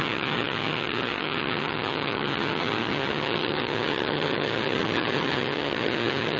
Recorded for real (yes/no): no